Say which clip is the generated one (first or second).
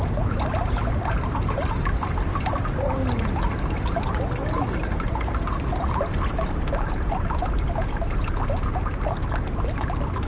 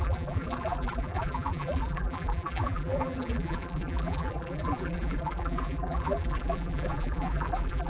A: second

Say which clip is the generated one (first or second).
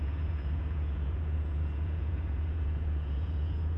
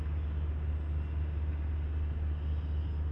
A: first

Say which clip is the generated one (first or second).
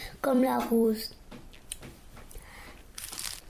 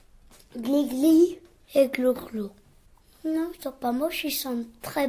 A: first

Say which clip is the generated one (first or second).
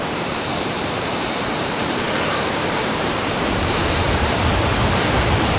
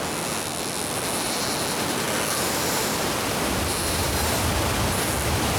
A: first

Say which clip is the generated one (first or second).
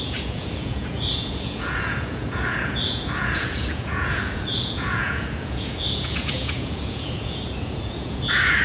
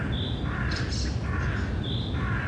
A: first